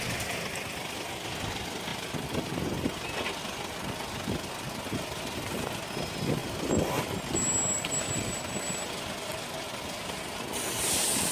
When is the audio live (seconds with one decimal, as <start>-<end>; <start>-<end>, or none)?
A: 0.0-11.3